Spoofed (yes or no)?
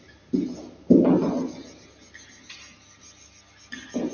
no